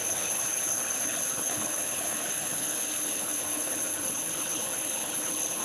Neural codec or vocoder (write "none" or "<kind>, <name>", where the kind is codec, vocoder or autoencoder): codec, HILCodec